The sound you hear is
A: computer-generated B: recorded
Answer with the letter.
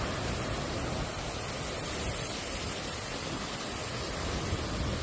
B